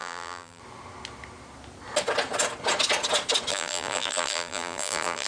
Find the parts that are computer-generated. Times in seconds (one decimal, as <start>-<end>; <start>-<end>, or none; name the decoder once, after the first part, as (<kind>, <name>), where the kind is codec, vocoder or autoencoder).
0.0-0.6 (vocoder, BigVGAN v2); 3.5-5.3